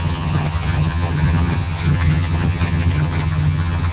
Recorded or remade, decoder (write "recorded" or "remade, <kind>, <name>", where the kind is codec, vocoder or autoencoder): remade, vocoder, HiFi-GAN